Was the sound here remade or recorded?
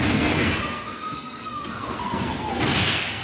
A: remade